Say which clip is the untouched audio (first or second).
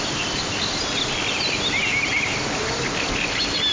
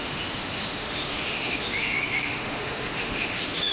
first